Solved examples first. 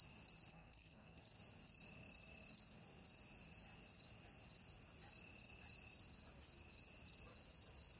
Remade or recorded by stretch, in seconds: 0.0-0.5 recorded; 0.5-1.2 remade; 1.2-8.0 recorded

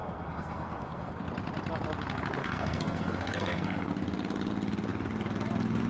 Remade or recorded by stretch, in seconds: 0.0-1.2 remade; 1.2-2.4 recorded; 2.4-3.9 remade; 3.9-5.9 recorded

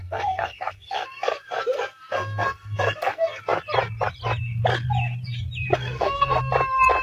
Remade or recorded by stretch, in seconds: 0.0-3.4 remade; 3.4-5.7 recorded; 5.7-6.4 remade; 6.4-7.0 recorded

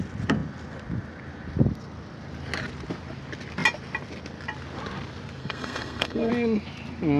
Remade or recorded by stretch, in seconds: 0.0-5.4 recorded; 5.4-6.3 remade; 6.3-7.2 recorded

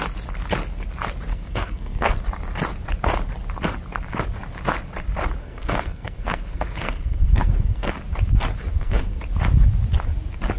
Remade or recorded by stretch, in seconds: 0.0-1.3 recorded; 1.3-2.1 remade; 2.1-5.4 recorded; 5.4-7.9 remade; 7.9-8.7 recorded; 8.7-9.2 remade; 9.2-10.6 recorded

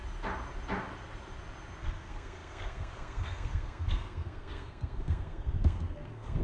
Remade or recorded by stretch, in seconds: 0.0-1.8 recorded; 1.8-6.4 remade

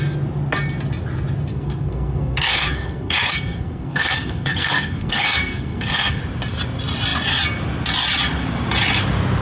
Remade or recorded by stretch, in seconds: 0.0-1.5 recorded; 1.5-6.2 remade; 6.2-9.4 recorded

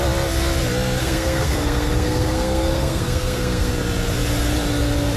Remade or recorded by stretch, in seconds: 0.0-1.0 recorded; 1.0-3.7 remade; 3.7-5.2 recorded